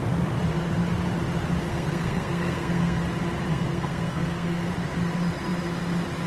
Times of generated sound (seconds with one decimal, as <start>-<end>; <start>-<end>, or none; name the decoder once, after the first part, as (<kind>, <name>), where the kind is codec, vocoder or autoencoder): 1.7-3.0 (codec, SNAC); 3.5-4.7